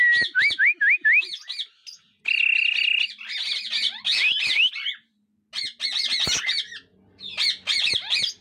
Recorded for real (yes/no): yes